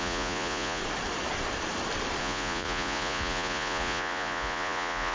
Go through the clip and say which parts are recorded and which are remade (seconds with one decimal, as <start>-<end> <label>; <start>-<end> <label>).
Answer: 0.0-0.8 remade; 0.8-2.2 recorded; 2.2-5.1 remade